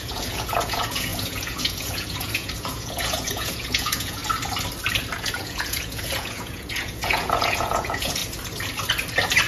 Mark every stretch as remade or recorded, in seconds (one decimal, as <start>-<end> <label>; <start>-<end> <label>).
0.0-4.2 remade; 4.2-5.2 recorded; 5.2-8.2 remade; 8.2-9.5 recorded